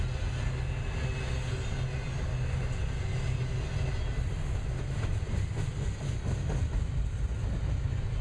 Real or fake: real